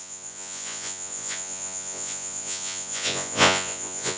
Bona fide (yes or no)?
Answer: no